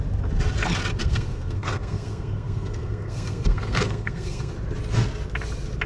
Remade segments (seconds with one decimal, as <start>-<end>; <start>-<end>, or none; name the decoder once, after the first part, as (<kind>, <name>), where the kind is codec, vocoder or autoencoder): 1.0-4.5 (codec, SNAC)